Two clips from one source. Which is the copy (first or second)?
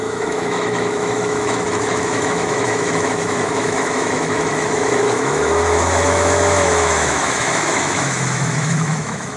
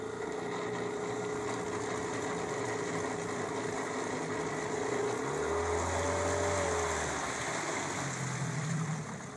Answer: first